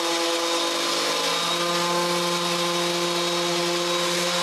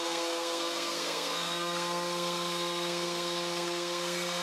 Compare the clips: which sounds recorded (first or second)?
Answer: first